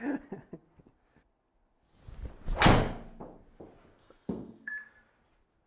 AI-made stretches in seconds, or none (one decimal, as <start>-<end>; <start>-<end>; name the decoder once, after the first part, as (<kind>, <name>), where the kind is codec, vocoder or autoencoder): 4.0-4.7 (codec, SNAC)